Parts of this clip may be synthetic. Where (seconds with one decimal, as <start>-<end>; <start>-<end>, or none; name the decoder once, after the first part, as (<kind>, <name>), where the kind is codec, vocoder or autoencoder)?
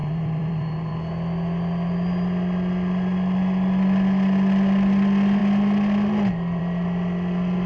0.0-0.9 (vocoder, BigVGAN v2)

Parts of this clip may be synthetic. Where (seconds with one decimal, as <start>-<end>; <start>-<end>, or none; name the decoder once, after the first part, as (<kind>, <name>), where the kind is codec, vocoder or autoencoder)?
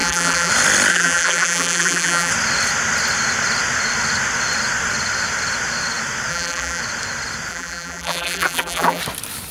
0.0-0.5 (vocoder, BigVGAN v2); 0.9-2.3; 6.3-6.8; 7.5-9.0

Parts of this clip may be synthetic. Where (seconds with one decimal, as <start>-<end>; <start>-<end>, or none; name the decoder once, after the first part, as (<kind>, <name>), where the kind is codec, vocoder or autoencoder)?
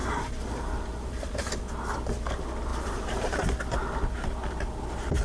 0.0-1.6 (vocoder, BigVGAN v2); 2.7-3.4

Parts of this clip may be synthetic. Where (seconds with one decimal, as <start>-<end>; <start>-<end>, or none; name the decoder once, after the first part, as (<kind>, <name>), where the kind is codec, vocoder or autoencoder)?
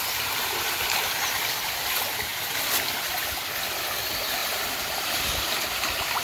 none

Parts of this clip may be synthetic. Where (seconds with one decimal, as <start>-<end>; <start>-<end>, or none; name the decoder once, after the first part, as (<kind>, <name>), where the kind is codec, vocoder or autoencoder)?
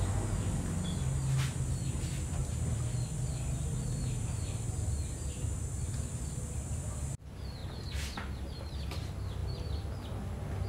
2.4-5.7 (vocoder, BigVGAN v2)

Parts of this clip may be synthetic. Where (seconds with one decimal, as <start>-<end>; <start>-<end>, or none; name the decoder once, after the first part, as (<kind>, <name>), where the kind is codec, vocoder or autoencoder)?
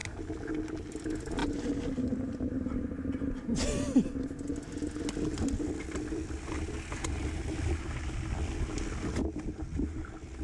1.4-3.4 (vocoder, BigVGAN v2)